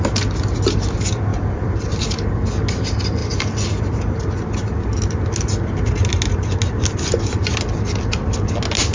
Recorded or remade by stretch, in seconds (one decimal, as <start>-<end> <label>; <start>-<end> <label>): 0.0-1.3 recorded; 1.3-1.9 remade; 1.9-3.2 recorded; 3.2-4.2 remade; 4.2-8.9 recorded